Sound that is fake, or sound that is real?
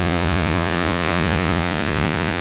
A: fake